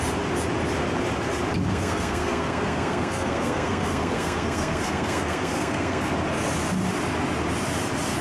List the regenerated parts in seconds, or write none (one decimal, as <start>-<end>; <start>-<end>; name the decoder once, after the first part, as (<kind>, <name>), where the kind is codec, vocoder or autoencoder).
1.7-6.1 (codec, SNAC)